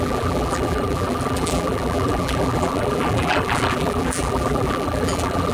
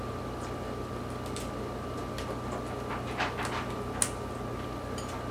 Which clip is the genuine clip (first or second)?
second